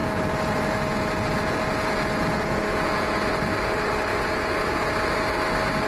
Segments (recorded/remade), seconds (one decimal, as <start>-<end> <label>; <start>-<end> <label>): 0.0-3.5 remade; 3.5-4.1 recorded; 4.1-4.7 remade; 4.7-5.9 recorded

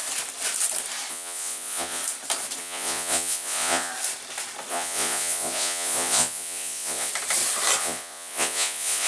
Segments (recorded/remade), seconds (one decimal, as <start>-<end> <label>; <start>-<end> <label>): 0.0-1.1 recorded; 1.1-2.0 remade; 2.0-2.6 recorded; 2.6-3.9 remade; 3.9-4.7 recorded; 4.7-7.1 remade; 7.1-7.8 recorded; 7.8-9.1 remade

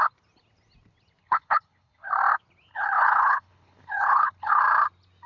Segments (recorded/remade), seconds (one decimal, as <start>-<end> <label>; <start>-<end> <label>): 0.0-1.2 recorded; 1.2-2.1 remade; 2.1-2.7 recorded; 2.7-4.6 remade; 4.6-5.3 recorded

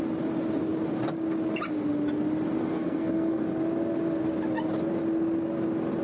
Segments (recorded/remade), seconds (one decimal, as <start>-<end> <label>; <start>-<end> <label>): 0.0-2.6 recorded; 2.6-3.4 remade; 3.4-6.0 recorded